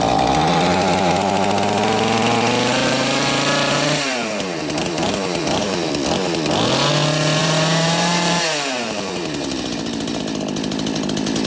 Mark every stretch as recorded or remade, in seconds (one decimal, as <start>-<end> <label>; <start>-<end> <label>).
0.0-2.8 recorded; 2.8-5.9 remade; 5.9-7.4 recorded; 7.4-10.2 remade; 10.2-11.5 recorded